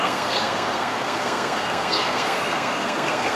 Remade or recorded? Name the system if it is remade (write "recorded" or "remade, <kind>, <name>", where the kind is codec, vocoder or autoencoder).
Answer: remade, codec, SNAC